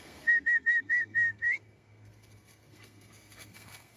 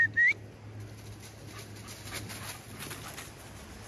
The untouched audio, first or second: second